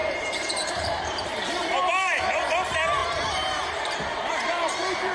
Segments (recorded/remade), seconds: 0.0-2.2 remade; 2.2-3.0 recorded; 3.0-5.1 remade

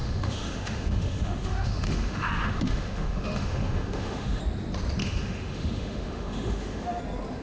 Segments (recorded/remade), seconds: 0.0-4.4 remade; 4.4-5.0 recorded; 5.0-7.0 remade; 7.0-7.4 recorded

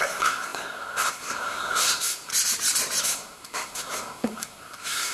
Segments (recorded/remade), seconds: 0.0-2.3 remade; 2.3-3.0 recorded; 3.0-5.1 remade

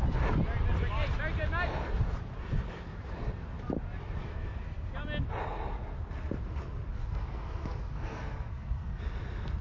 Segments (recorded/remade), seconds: 0.0-4.2 recorded; 4.2-4.9 remade; 4.9-6.9 recorded; 6.9-9.0 remade; 9.0-9.6 recorded

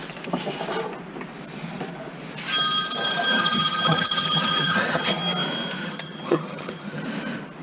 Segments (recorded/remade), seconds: 0.0-3.3 recorded; 3.3-5.2 remade; 5.2-5.8 recorded; 5.8-7.0 remade; 7.0-7.6 recorded

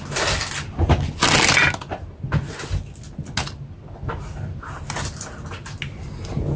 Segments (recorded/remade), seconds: 0.0-6.6 recorded

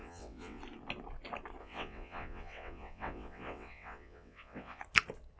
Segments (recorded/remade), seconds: 0.0-0.6 remade; 0.6-1.6 recorded; 1.6-4.8 remade; 4.8-5.4 recorded

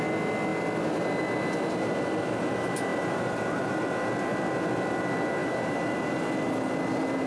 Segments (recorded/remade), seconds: 0.0-2.9 recorded; 2.9-3.7 remade; 3.7-5.4 recorded; 5.4-7.3 remade